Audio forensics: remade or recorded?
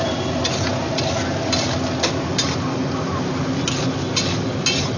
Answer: recorded